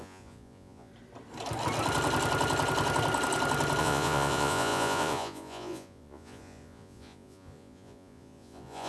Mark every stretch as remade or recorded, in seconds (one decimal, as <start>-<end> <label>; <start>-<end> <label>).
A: 0.0-0.9 remade; 0.9-3.8 recorded; 3.8-8.9 remade